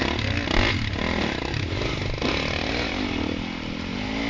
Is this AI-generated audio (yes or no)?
no